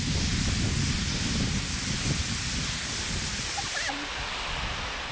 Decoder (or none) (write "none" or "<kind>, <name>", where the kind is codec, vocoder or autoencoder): none